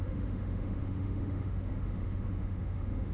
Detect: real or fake fake